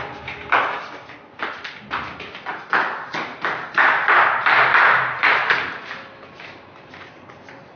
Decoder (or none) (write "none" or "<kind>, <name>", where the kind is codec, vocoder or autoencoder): none